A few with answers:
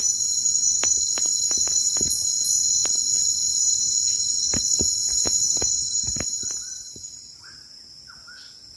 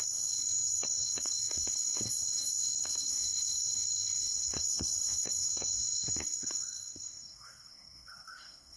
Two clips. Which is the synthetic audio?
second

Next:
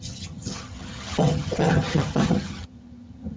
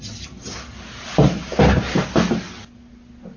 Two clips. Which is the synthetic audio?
first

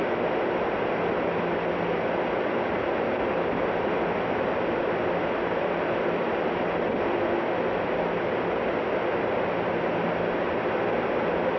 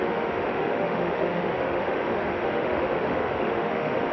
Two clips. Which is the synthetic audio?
second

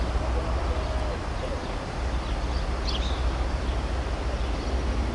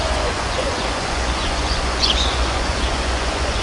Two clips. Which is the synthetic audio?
second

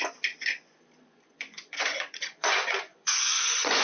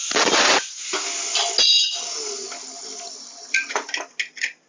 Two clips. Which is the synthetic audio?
first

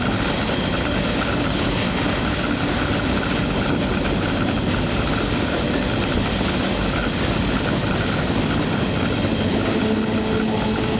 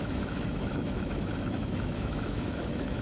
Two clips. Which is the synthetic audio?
second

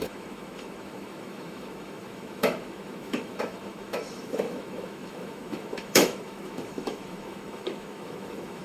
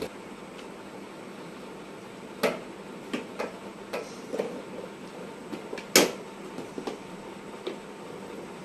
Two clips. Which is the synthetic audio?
first